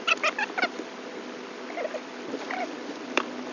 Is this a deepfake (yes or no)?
no